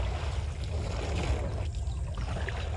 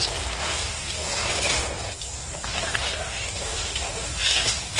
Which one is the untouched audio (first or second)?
first